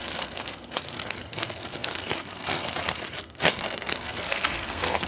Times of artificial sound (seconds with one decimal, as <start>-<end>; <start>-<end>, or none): 0.0-5.1